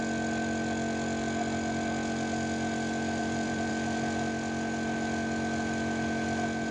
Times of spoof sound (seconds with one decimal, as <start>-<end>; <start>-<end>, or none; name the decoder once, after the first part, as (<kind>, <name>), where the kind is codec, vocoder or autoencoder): 3.2-3.7 (vocoder, BigVGAN v2)